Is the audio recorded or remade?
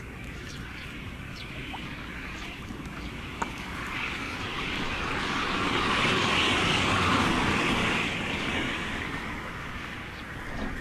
remade